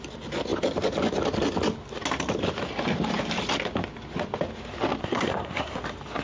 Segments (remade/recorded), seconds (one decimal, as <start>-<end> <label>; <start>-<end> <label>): 0.0-5.0 recorded; 5.0-5.8 remade; 5.8-6.2 recorded